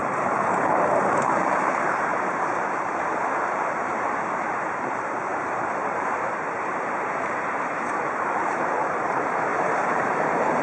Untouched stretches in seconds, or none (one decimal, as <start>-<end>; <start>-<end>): none